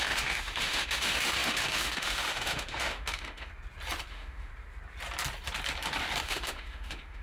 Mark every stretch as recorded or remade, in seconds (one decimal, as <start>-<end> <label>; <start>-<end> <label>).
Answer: 0.0-3.5 remade; 3.5-4.1 recorded; 4.1-4.5 remade; 4.5-6.2 recorded; 6.2-7.2 remade